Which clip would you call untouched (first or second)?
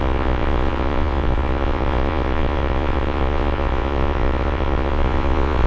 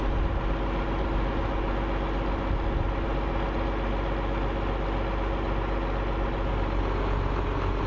second